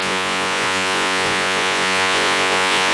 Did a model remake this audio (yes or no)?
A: yes